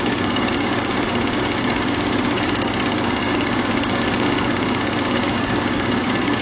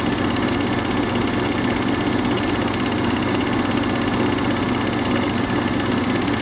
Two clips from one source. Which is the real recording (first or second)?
second